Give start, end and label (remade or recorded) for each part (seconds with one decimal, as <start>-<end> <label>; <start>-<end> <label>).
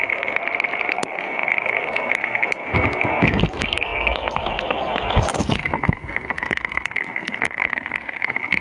0.0-0.4 remade; 0.4-0.9 recorded; 0.9-8.6 remade